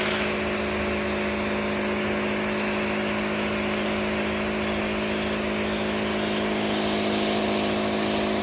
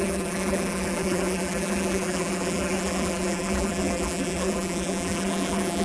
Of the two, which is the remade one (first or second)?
second